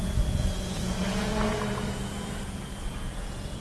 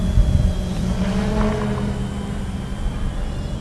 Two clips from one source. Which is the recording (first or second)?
second